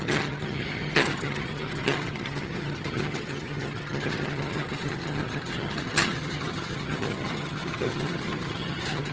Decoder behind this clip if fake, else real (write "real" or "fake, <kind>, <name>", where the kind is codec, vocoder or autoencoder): fake, vocoder, HiFi-GAN